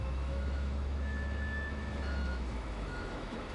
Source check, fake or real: fake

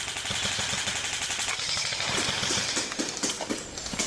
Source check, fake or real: real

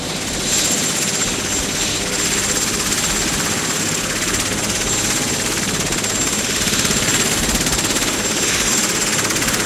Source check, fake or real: real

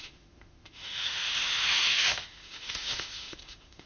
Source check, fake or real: fake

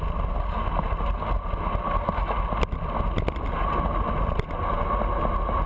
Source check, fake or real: real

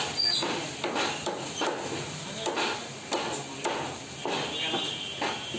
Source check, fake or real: real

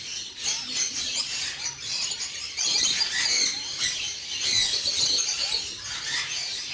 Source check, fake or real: real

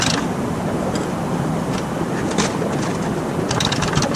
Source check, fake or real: real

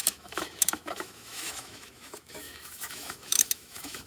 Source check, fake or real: fake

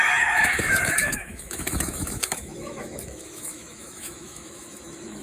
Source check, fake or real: fake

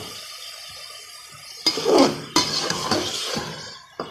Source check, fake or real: real